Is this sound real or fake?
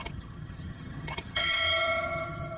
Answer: fake